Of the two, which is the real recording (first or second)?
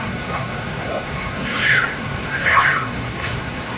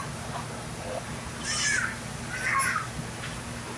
second